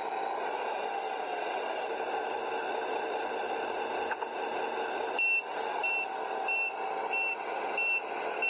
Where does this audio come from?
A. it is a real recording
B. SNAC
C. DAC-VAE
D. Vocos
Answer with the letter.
A